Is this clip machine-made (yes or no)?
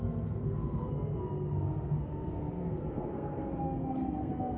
yes